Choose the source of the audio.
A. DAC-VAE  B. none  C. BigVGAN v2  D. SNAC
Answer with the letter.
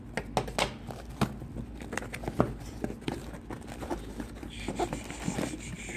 B